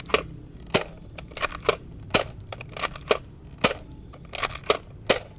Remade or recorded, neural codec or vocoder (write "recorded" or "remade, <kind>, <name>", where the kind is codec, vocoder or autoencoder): recorded